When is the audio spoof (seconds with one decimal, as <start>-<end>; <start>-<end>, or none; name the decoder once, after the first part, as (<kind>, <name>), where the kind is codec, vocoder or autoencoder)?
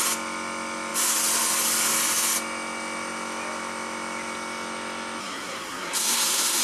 5.2-6.6 (codec, SNAC)